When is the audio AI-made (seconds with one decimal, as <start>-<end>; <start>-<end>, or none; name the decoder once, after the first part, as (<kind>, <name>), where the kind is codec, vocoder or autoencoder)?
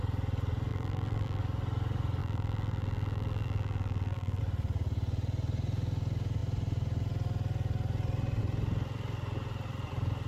0.7-1.4 (vocoder, BigVGAN v2); 2.2-4.4